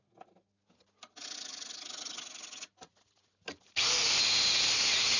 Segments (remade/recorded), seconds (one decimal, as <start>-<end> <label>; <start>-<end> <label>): 0.0-5.2 recorded